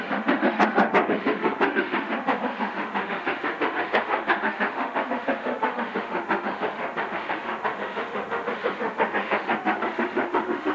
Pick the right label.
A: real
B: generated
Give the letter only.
B